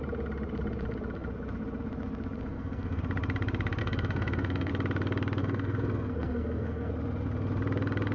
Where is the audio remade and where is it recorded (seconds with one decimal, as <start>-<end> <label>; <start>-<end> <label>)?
0.0-2.5 recorded; 2.5-3.0 remade; 3.0-3.8 recorded; 3.8-4.7 remade; 4.7-5.4 recorded; 5.4-6.9 remade; 6.9-8.1 recorded